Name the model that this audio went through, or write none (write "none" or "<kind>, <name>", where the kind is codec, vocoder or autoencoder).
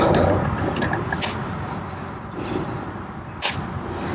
none